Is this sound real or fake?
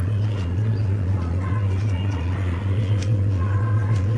fake